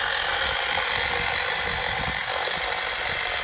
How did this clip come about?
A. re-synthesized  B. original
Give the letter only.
B